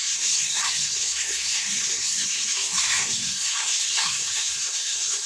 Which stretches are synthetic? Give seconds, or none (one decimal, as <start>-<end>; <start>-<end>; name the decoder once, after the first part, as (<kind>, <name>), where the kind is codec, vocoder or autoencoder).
0.0-5.3 (codec, SNAC)